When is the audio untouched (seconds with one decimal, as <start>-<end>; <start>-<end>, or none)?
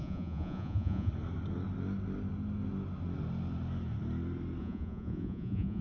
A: 1.1-4.6